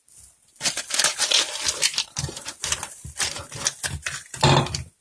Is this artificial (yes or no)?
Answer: no